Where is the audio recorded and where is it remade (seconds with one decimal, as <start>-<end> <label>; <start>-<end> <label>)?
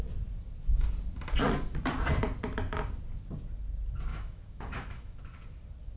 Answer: 0.0-4.1 recorded; 4.1-5.2 remade; 5.2-6.0 recorded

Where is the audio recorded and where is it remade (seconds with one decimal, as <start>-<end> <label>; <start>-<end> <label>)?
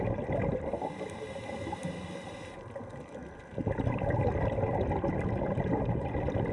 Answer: 0.0-6.5 recorded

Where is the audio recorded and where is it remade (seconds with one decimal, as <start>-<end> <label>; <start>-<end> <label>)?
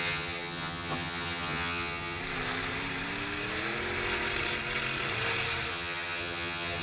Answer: 0.0-2.2 remade; 2.2-5.7 recorded; 5.7-6.8 remade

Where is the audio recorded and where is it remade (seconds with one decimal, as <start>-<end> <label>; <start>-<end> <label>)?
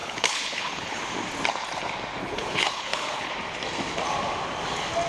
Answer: 0.0-1.0 remade; 1.0-2.2 recorded; 2.2-3.3 remade; 3.3-5.1 recorded